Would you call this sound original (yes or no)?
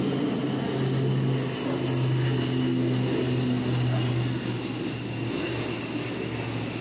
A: yes